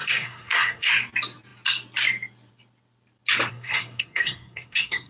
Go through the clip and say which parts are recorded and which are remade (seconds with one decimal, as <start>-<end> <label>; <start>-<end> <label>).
0.0-0.9 remade; 0.9-3.5 recorded; 3.5-5.1 remade